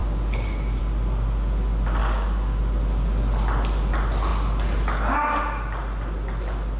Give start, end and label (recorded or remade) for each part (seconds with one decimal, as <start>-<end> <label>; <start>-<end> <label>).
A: 0.0-0.8 remade; 0.8-2.0 recorded; 2.0-2.6 remade; 2.6-6.8 recorded